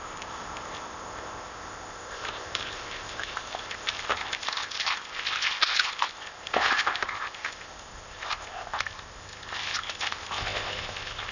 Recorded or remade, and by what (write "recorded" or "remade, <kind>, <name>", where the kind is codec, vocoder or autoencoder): remade, codec, ZipCodec